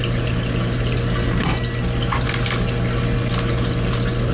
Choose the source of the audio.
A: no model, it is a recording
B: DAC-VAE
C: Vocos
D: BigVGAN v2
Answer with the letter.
A